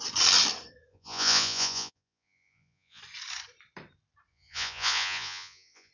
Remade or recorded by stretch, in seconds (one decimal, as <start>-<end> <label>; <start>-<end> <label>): 0.0-0.9 recorded; 0.9-3.0 remade; 3.0-4.3 recorded; 4.3-5.9 remade

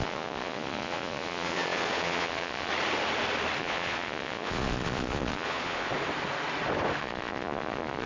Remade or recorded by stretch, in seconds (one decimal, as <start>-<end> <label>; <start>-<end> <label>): 0.0-2.7 remade; 2.7-3.6 recorded; 3.6-5.9 remade; 5.9-7.0 recorded; 7.0-8.1 remade